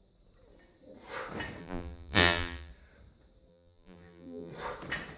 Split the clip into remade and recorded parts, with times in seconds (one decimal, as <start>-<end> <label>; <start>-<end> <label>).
0.0-1.6 recorded; 1.6-2.7 remade; 2.7-3.5 recorded; 3.5-4.5 remade; 4.5-5.2 recorded